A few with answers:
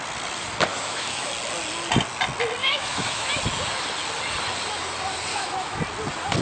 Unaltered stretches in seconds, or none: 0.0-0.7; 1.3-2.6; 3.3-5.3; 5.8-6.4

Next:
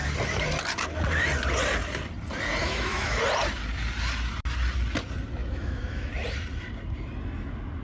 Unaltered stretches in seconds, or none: 0.0-2.6; 3.2-5.4; 6.1-7.8

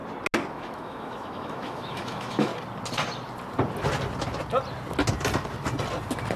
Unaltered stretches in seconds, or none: 0.0-0.5; 2.5-6.4